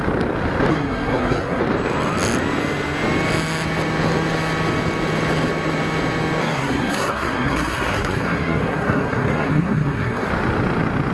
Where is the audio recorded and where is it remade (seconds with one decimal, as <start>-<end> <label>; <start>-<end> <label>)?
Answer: 0.0-0.7 recorded; 0.7-1.6 remade; 1.6-6.4 recorded; 6.4-10.3 remade; 10.3-11.1 recorded